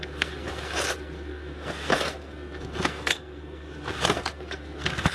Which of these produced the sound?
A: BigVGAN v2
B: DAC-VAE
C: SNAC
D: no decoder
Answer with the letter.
C